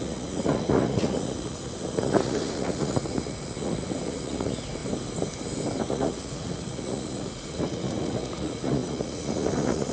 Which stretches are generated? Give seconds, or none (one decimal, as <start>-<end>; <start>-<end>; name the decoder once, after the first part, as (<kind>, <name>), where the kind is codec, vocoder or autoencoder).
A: 0.0-4.8 (vocoder, Vocos); 5.8-9.9

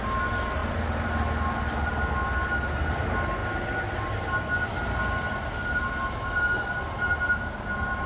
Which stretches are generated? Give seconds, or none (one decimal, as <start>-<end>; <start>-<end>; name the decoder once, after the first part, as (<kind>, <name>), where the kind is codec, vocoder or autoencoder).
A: none

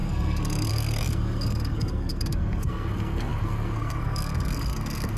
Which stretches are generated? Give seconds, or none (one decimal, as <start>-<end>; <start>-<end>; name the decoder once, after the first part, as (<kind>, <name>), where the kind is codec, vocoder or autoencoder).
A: 0.0-5.2 (codec, SNAC)